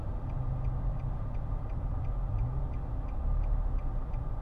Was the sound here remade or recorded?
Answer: recorded